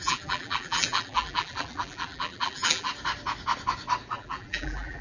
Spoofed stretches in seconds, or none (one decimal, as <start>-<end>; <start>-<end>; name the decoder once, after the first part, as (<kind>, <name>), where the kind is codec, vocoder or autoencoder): 0.0-2.9 (vocoder, BigVGAN v2); 4.1-5.0